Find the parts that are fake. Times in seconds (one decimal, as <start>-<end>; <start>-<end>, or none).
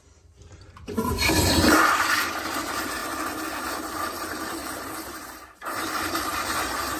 0.0-3.0; 3.6-7.0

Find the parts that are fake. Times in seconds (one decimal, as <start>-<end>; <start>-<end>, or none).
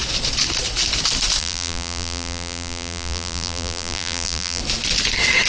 1.4-4.6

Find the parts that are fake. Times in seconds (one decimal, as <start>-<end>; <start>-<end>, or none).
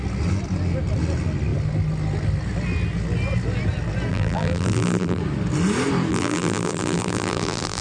4.1-5.2; 6.1-7.8